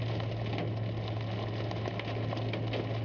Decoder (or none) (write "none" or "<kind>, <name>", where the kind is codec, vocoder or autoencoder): none